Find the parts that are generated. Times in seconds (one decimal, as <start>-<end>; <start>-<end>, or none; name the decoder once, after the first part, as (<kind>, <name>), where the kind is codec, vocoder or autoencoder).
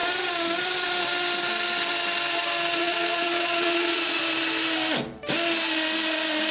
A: 2.8-4.2 (vocoder, Vocos)